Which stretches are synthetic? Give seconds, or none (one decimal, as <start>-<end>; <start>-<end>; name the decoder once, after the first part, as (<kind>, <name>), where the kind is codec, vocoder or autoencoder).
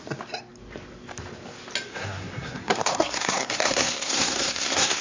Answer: 1.9-5.0 (codec, SNAC)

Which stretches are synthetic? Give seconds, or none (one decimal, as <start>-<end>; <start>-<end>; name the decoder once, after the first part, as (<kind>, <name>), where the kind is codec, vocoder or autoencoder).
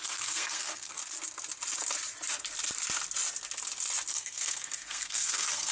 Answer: 0.0-1.0 (codec, SNAC); 4.1-5.7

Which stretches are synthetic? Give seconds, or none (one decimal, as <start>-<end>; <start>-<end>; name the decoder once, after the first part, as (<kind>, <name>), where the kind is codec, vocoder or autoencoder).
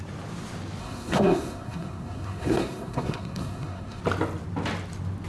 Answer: 0.8-4.0 (codec, SNAC)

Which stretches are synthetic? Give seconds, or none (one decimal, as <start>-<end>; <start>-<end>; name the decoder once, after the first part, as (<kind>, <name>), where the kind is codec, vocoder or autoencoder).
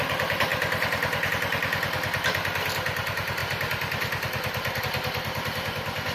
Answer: none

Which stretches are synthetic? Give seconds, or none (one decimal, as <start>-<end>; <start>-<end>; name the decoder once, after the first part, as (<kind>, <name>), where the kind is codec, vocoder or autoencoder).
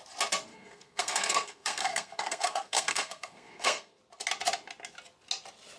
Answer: 0.5-4.0 (codec, SNAC)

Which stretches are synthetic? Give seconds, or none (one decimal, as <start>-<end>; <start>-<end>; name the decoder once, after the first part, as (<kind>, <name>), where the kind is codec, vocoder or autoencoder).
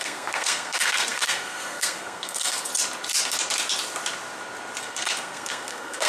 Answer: 0.0-2.7 (codec, SNAC); 4.8-6.1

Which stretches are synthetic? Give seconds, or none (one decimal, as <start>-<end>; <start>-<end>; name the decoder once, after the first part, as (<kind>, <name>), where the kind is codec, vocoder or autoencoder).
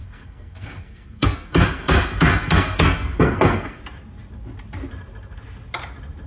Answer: 0.0-3.8 (codec, SNAC)